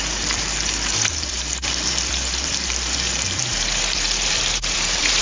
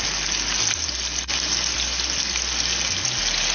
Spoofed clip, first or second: first